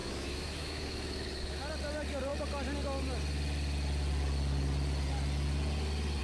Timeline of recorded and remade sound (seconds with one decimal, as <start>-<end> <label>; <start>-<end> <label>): 0.0-1.6 remade; 1.6-6.2 recorded